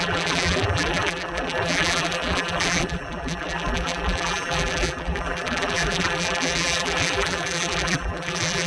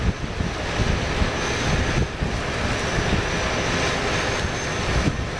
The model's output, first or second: first